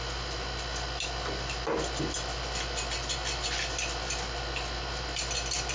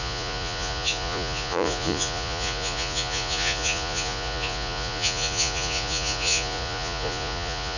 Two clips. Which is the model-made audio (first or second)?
second